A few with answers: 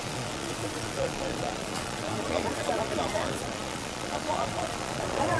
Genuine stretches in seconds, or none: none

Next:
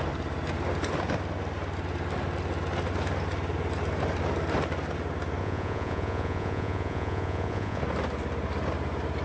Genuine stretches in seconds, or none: 0.0-5.4; 7.8-9.2

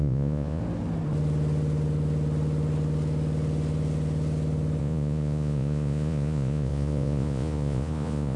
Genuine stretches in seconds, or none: 0.6-4.8

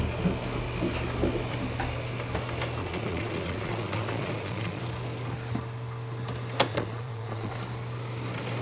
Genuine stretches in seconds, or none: 0.0-2.8; 4.8-6.7; 7.5-8.6

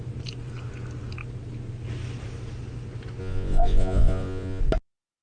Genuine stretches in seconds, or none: 0.0-3.2; 4.6-5.2

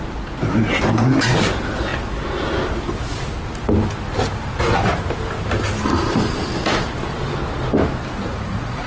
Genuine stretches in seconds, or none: 0.0-8.3